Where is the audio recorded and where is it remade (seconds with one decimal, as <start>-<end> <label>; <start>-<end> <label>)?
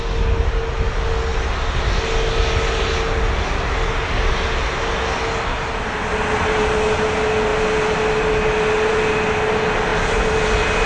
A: 0.0-10.9 recorded